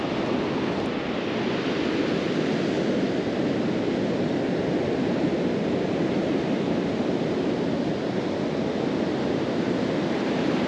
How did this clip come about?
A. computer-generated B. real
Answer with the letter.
B